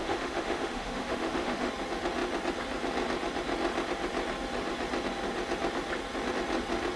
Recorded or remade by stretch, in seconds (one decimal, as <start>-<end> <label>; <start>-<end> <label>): 0.0-1.7 remade; 1.7-7.0 recorded